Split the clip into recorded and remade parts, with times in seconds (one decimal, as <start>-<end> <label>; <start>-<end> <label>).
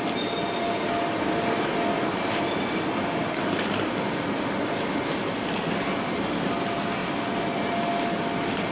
0.0-8.7 recorded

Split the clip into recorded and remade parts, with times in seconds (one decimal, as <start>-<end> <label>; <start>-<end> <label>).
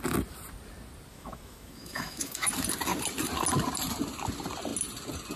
0.0-1.1 recorded; 1.1-2.5 remade; 2.5-5.4 recorded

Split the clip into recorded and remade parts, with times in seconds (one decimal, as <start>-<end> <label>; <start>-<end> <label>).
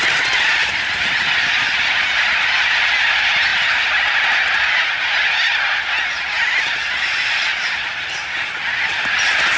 0.0-9.6 recorded